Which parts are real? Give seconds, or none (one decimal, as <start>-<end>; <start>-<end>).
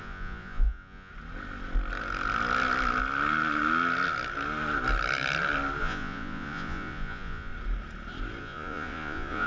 1.1-5.8; 7.5-8.4